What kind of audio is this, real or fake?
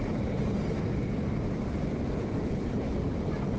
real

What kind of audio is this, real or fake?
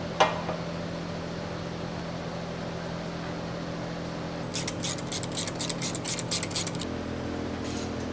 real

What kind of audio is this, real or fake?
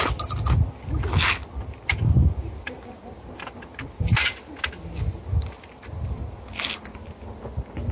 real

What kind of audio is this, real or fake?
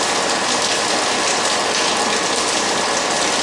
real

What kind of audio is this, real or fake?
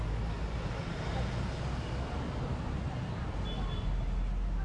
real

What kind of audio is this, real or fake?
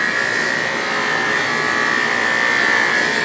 real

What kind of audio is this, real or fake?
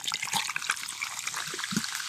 real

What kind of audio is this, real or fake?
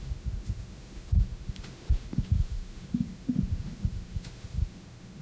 fake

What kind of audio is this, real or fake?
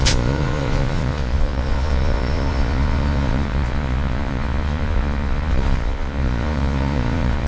fake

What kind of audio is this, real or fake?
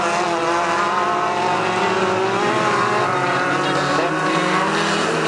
real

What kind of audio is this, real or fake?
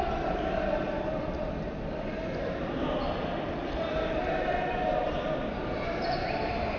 real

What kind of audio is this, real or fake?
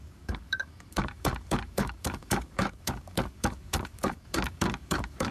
fake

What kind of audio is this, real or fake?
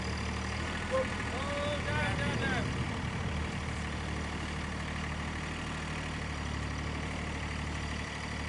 real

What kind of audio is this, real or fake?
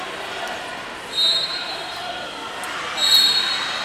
real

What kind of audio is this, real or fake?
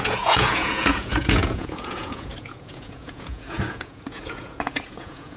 fake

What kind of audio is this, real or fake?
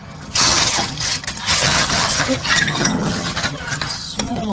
fake